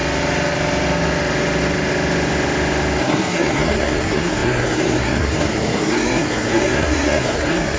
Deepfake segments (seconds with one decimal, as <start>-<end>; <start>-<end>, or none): 3.0-7.8